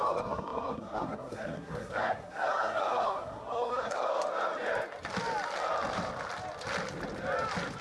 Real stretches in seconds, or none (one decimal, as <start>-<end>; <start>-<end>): 4.1-7.8

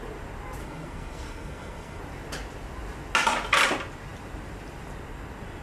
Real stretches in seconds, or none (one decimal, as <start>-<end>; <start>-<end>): 0.0-0.6; 2.0-5.6

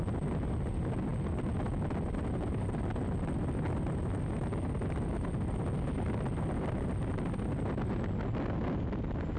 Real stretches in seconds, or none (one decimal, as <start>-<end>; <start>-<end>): 0.0-9.4

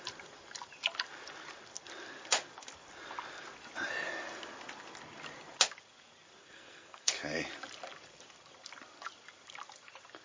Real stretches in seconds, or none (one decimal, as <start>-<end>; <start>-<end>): 0.0-6.4; 7.1-10.2

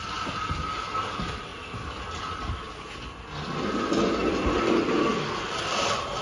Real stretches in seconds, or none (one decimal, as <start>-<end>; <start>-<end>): 0.0-6.2

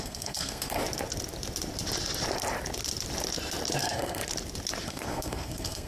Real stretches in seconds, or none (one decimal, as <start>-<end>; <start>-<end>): 0.8-3.8; 4.2-4.8

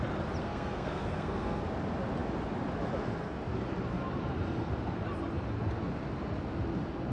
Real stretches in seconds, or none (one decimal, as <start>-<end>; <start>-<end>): 0.0-0.4; 1.6-7.1

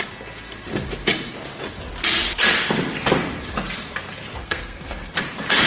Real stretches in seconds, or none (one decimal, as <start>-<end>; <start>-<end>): 0.0-4.4; 5.2-5.7